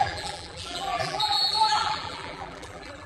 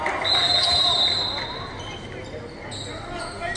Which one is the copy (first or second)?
first